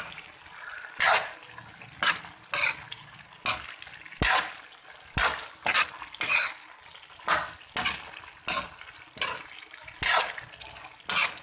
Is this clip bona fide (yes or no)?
yes